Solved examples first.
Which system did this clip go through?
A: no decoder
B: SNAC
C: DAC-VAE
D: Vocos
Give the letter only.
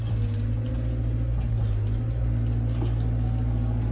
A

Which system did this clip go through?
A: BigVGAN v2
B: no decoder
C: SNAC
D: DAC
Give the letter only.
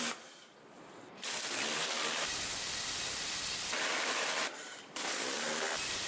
A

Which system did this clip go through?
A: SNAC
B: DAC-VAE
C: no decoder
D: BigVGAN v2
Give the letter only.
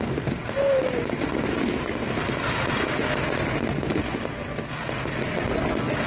C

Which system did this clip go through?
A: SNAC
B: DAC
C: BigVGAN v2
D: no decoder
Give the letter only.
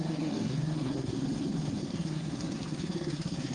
A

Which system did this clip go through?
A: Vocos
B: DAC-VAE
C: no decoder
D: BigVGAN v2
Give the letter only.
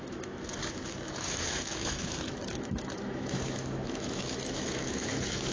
B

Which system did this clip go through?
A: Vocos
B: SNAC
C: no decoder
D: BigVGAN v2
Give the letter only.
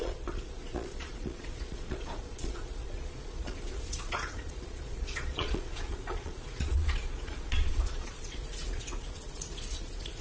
A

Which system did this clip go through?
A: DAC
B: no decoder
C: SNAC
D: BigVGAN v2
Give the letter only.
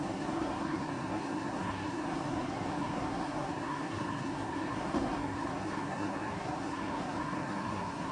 C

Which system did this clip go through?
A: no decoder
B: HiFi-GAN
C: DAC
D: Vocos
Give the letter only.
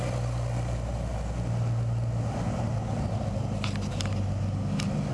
A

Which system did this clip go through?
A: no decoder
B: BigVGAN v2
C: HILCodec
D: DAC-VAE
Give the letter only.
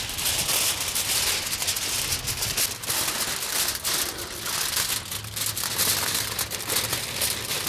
A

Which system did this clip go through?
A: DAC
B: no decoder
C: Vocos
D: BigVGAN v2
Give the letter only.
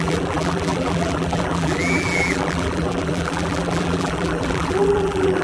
D